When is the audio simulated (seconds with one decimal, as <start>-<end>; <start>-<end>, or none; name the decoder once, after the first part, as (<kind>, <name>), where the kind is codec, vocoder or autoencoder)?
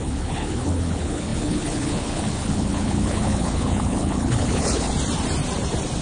0.0-4.9 (codec, HILCodec)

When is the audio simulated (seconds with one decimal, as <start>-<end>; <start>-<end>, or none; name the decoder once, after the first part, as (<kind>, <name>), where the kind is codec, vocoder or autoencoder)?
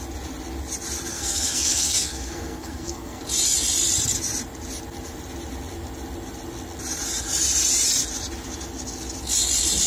1.1-3.2 (codec, SNAC)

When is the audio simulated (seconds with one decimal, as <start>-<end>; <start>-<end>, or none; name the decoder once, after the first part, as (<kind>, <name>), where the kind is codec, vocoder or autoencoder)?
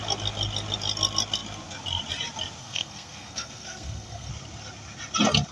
2.6-4.3 (codec, SNAC)